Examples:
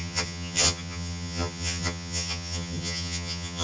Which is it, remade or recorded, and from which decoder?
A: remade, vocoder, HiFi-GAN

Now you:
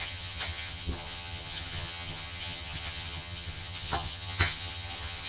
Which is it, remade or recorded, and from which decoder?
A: remade, vocoder, HiFi-GAN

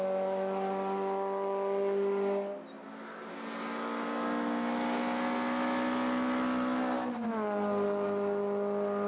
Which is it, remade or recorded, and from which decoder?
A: recorded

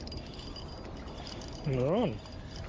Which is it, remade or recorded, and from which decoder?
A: recorded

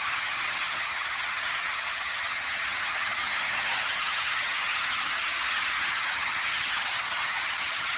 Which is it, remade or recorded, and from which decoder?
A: remade, vocoder, HiFi-GAN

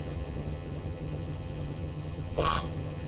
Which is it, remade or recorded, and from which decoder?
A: remade, vocoder, HiFi-GAN